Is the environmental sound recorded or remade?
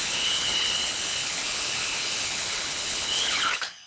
remade